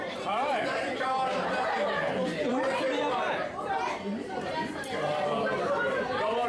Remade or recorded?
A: remade